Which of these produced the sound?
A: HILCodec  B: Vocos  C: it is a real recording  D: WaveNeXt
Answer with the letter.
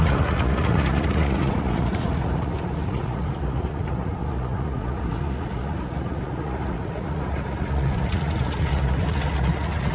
B